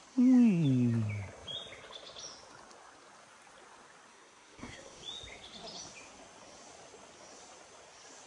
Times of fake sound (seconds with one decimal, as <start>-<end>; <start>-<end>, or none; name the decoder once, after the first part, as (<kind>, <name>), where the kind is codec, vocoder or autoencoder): 4.1-5.0 (codec, SNAC)